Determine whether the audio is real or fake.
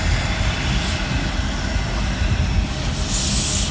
real